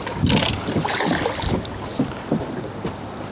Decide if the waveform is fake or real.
real